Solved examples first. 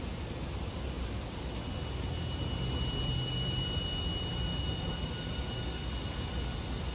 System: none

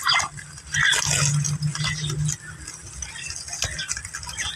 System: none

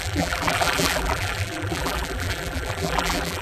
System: vocoder, BigVGAN v2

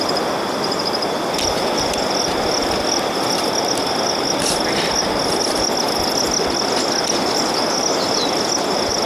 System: none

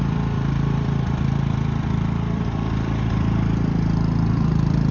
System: vocoder, BigVGAN v2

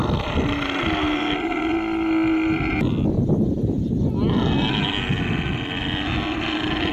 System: none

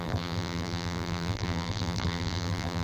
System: vocoder, BigVGAN v2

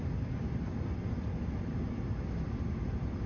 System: none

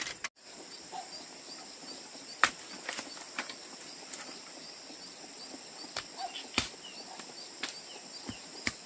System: none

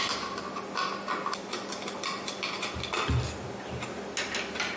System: none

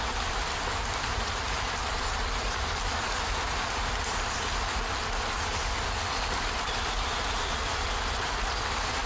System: vocoder, BigVGAN v2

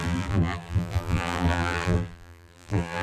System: vocoder, BigVGAN v2